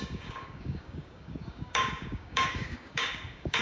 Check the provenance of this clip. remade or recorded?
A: remade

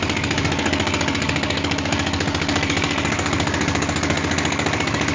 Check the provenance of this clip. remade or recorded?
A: remade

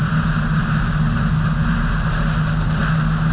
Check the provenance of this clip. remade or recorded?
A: recorded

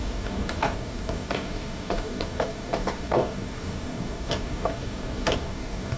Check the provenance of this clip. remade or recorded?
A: remade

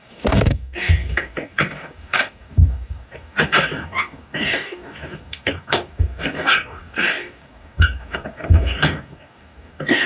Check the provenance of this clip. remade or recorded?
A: remade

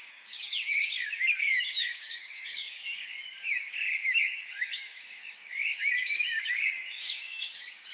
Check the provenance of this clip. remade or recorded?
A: remade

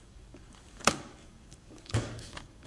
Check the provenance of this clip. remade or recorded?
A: remade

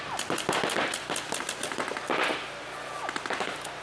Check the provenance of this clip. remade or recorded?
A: recorded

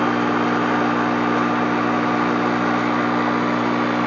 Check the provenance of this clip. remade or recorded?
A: recorded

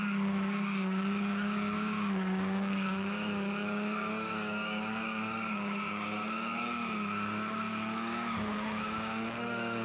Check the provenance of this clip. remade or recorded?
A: remade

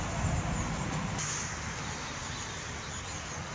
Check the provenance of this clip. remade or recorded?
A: recorded